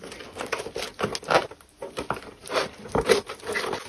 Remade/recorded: recorded